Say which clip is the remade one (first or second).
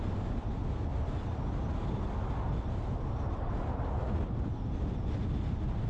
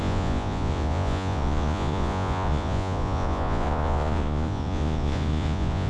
second